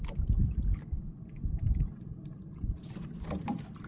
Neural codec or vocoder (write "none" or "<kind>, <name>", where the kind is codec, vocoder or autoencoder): none